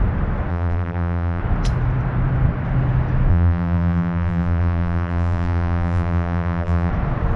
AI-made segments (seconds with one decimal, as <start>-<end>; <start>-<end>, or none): 0.5-1.4; 3.3-6.9